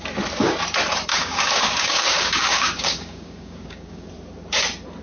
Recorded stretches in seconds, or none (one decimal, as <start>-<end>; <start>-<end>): 0.0-1.1; 4.1-5.0